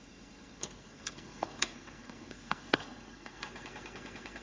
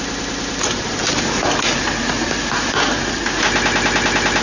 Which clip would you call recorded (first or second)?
second